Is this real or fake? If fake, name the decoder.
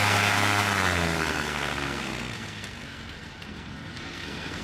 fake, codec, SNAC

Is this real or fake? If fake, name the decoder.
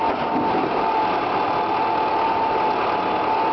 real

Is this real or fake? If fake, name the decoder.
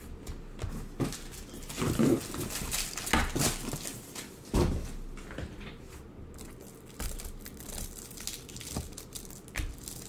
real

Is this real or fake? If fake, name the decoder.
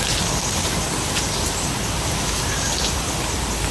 real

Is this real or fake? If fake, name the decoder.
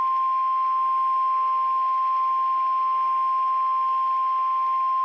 real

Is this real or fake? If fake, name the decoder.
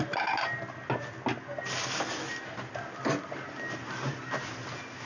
real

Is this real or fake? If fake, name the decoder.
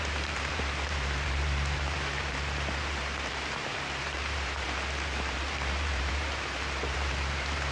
fake, vocoder, BigVGAN v2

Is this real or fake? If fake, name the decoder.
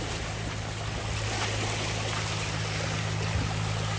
real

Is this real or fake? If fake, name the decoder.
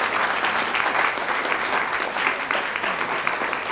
real